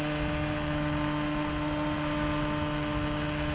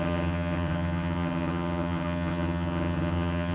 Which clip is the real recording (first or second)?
first